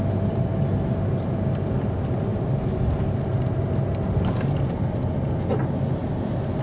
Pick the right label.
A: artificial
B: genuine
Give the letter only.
B